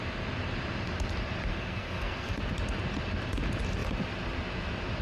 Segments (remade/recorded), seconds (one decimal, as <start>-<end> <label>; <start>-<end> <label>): 0.0-1.5 recorded; 1.5-2.4 remade; 2.4-5.0 recorded